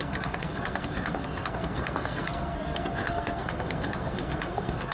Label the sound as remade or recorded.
remade